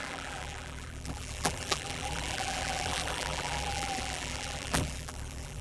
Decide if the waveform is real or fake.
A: fake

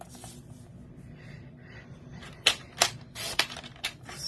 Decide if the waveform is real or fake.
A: fake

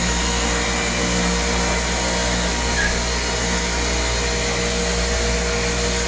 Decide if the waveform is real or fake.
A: real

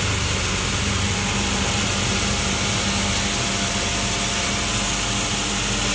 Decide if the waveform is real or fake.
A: real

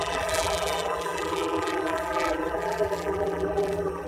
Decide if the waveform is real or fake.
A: fake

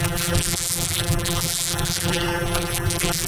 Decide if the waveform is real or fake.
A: fake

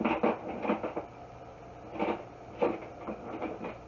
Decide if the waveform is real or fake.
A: real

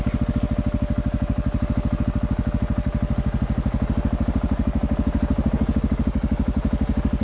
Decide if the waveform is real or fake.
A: real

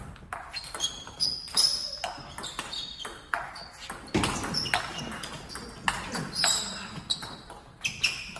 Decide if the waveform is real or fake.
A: real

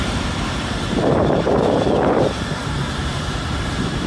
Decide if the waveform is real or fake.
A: fake